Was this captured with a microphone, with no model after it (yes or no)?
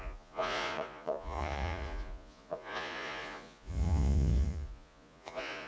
no